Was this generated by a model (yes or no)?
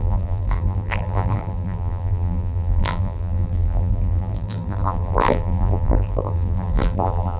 yes